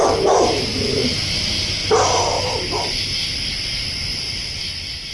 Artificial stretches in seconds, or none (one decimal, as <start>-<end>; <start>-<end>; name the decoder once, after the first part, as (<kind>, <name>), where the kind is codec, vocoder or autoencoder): 0.7-1.3 (vocoder, BigVGAN v2); 1.8-3.0; 4.1-4.6